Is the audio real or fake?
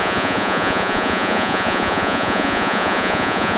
fake